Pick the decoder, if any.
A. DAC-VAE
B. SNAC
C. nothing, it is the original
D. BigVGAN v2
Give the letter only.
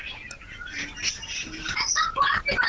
C